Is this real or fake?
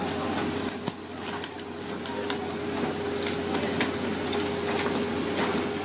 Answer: real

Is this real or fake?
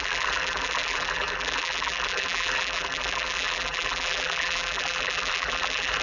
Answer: fake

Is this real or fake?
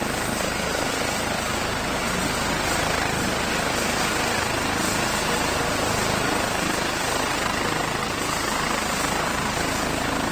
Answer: real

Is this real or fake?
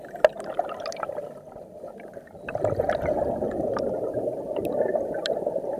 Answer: fake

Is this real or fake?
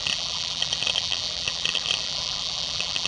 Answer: fake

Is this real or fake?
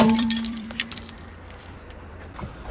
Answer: fake